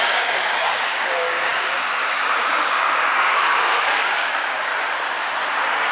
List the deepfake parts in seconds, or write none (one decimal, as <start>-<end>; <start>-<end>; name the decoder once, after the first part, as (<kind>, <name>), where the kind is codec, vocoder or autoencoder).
0.0-4.7 (codec, DAC)